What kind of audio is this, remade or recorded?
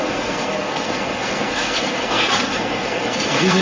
remade